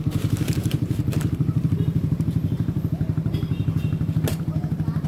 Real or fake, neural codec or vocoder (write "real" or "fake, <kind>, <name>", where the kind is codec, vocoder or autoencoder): fake, vocoder, BigVGAN v2